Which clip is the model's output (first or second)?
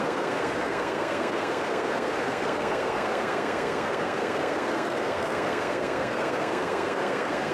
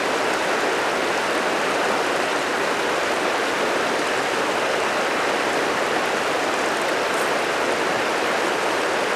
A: first